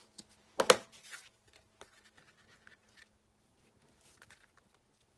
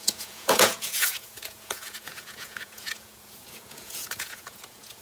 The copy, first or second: second